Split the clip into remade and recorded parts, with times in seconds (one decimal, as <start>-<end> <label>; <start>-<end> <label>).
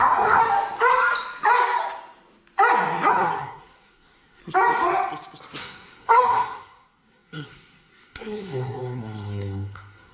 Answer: 0.0-0.4 remade; 0.4-3.1 recorded; 3.1-4.4 remade; 4.4-5.6 recorded; 5.6-10.1 remade